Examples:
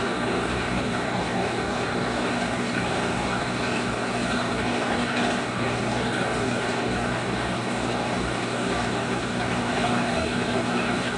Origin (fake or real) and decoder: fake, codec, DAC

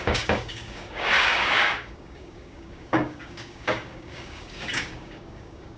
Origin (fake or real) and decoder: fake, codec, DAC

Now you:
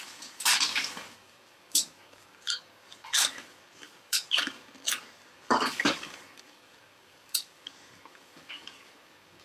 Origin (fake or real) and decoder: fake, codec, DAC